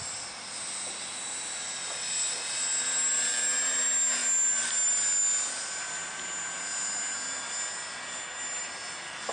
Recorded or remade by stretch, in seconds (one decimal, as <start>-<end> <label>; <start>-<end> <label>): 0.0-9.3 recorded